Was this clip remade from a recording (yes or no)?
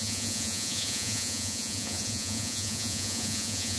yes